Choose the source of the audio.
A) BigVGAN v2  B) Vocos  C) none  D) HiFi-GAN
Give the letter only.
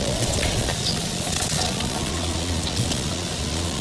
B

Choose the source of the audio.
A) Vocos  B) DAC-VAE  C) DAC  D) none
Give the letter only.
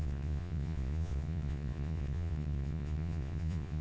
A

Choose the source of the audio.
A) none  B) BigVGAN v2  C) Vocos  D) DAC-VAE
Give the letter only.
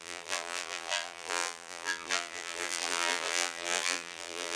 B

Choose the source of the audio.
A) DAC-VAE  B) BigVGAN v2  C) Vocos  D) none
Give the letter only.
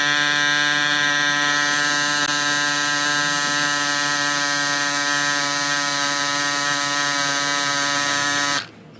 D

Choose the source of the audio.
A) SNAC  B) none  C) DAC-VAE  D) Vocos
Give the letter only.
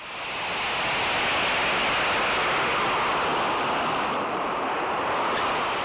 B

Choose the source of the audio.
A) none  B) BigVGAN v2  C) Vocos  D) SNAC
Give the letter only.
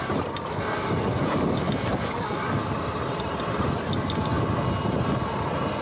A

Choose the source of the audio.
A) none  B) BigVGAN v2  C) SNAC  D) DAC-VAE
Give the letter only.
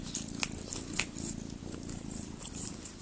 A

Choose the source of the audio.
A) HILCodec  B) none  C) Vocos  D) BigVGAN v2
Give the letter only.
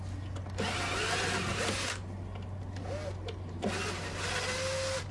B